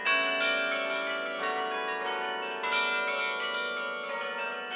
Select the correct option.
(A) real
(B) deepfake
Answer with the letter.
A